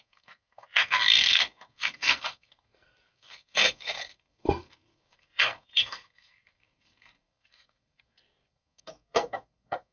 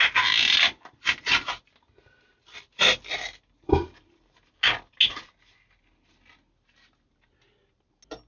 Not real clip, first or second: first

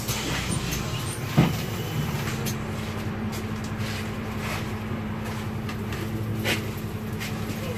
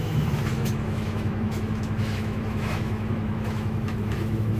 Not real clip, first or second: second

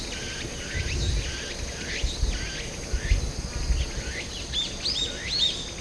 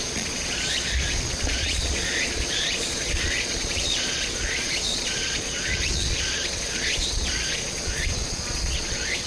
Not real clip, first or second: second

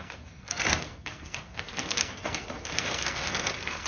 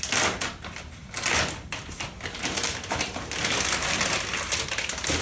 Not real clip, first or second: first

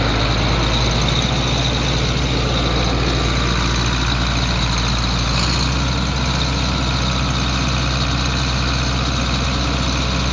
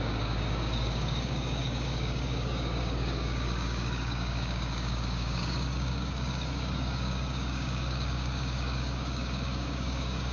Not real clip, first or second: second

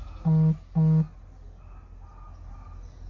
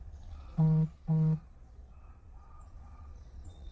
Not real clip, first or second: second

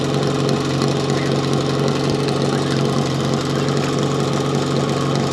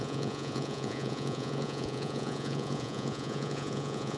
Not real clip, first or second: second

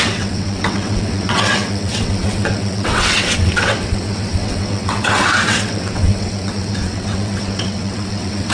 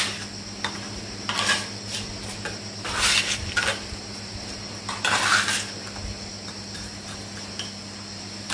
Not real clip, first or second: first